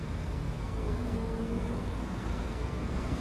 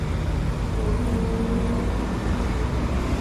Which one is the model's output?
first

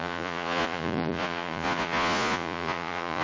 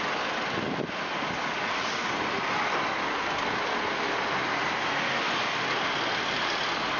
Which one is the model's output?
first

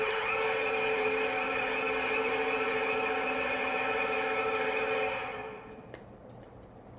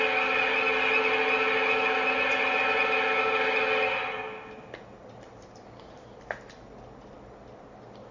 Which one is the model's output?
first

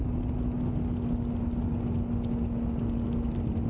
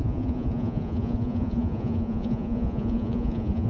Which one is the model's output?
second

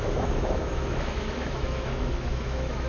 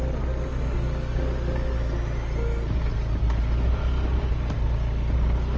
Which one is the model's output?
first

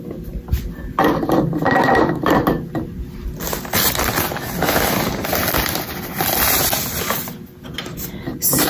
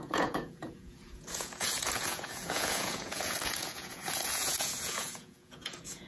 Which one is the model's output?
second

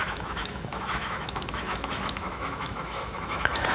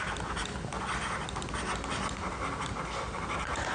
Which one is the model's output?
first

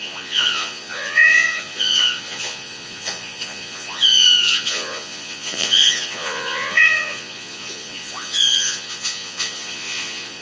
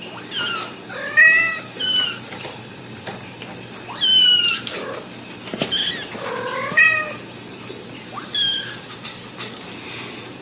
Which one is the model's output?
first